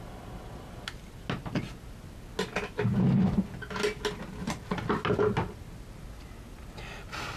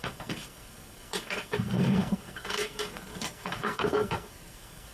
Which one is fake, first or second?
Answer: second